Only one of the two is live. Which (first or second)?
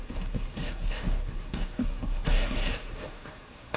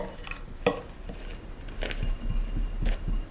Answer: second